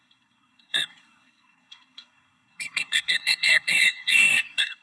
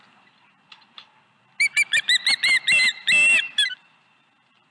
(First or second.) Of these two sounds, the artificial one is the first